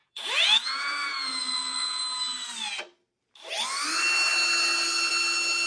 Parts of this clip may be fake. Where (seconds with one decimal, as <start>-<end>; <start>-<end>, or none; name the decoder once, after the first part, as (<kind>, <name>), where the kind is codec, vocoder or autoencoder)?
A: 0.0-2.0 (vocoder, Vocos)